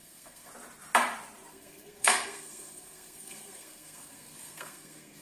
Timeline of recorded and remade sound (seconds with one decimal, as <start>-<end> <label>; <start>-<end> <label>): 0.0-0.5 remade; 0.5-1.5 recorded; 1.5-5.2 remade